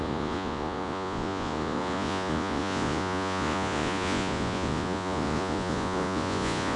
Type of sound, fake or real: fake